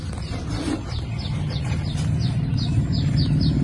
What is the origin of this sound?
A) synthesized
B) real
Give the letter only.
A